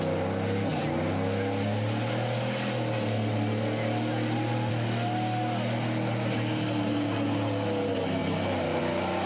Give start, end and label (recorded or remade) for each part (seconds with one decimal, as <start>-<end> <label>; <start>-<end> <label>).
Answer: 0.0-8.2 recorded; 8.2-8.8 remade; 8.8-9.3 recorded